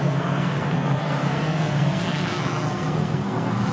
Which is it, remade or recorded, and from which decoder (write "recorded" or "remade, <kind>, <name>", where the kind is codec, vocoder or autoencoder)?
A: remade, codec, SNAC